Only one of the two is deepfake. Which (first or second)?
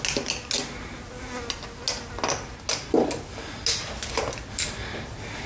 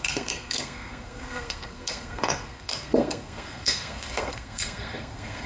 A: second